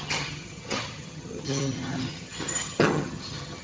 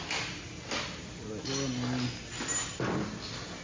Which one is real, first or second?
second